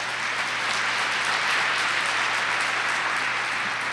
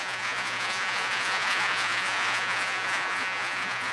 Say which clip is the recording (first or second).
first